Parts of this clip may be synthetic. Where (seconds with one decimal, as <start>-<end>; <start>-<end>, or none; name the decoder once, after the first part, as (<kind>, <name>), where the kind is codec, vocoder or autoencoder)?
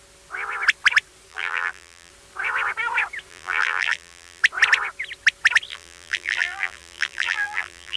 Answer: 1.3-2.1 (vocoder, BigVGAN v2); 3.3-4.4; 5.7-8.0